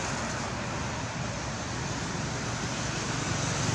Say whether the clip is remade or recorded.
recorded